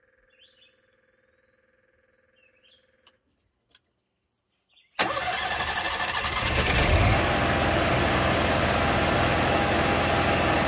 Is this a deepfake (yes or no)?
no